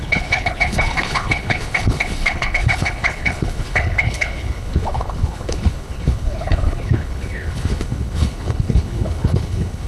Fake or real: fake